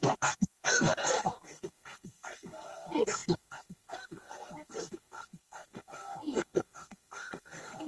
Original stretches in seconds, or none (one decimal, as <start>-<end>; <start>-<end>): none